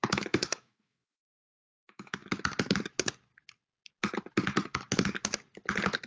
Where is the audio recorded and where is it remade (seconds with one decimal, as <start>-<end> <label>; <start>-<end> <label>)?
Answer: 0.0-2.2 remade; 2.2-6.1 recorded